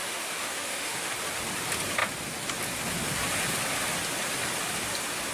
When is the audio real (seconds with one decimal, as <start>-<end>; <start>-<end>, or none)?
1.1-5.3